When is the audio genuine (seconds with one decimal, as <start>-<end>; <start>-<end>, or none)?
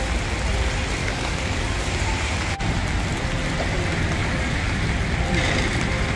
0.0-1.0; 1.8-4.2; 4.8-6.2